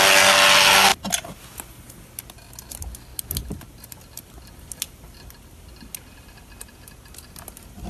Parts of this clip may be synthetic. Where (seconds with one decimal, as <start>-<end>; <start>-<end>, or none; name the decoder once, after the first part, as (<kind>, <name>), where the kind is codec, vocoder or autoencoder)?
none